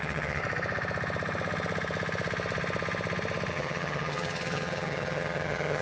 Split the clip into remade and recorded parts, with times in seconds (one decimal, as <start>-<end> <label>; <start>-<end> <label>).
0.0-0.4 remade; 0.4-3.5 recorded; 3.5-5.8 remade